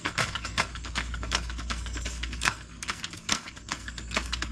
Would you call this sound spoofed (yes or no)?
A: yes